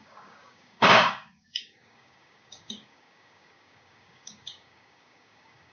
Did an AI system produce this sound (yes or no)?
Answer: yes